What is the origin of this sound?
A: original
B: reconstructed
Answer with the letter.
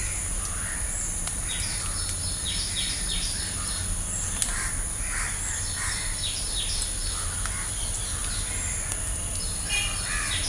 A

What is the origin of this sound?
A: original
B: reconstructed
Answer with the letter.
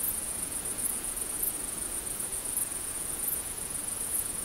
B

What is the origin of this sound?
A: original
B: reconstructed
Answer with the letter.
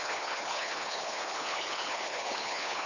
B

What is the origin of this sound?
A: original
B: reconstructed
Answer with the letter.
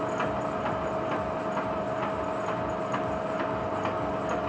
A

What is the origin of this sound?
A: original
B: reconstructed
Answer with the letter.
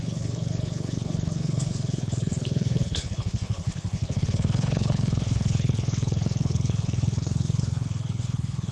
B